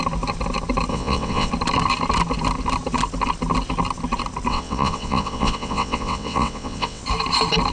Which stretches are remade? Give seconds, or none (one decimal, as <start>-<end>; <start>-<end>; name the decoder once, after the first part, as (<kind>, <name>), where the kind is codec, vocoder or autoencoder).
0.9-1.5 (vocoder, WaveNeXt); 4.5-7.0